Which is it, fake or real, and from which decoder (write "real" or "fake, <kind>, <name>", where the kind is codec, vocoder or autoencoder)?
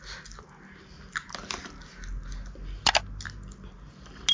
real